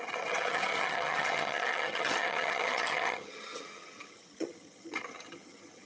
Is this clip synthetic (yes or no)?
yes